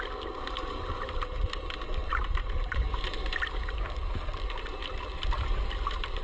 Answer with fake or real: real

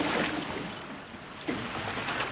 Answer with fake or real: real